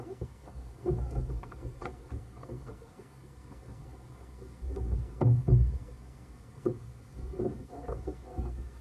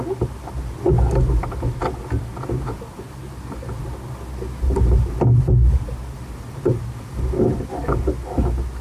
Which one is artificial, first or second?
first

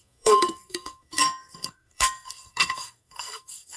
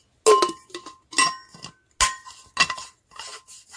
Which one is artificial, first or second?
first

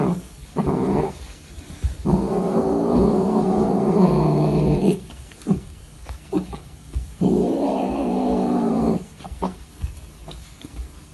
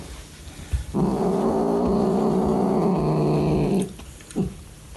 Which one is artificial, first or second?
first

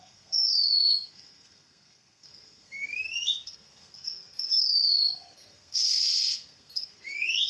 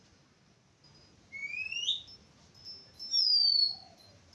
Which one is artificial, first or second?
first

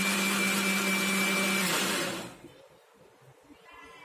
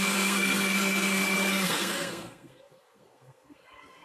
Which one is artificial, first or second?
second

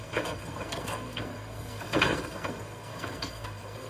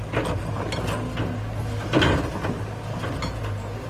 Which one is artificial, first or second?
first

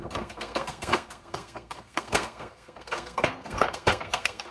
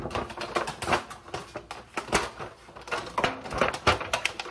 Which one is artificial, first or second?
first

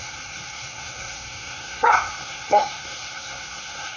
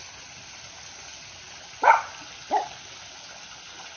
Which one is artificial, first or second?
first